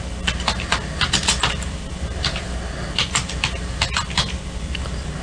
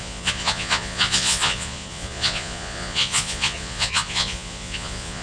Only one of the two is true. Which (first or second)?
first